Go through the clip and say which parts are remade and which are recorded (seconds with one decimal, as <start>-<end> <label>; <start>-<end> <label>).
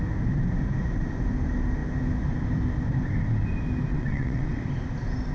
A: 0.0-3.9 recorded; 3.9-4.6 remade; 4.6-5.3 recorded